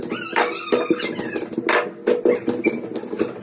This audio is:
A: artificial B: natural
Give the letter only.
B